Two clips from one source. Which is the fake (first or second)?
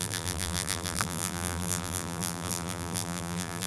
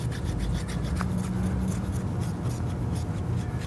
first